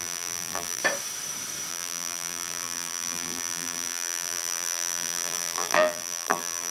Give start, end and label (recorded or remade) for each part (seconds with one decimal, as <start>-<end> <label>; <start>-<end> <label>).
0.0-0.8 remade; 0.8-1.7 recorded; 1.7-6.7 remade